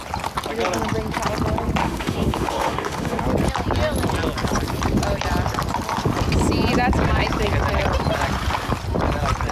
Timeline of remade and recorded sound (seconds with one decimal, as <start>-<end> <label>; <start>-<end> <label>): 0.0-1.8 recorded; 1.8-3.2 remade; 3.2-9.5 recorded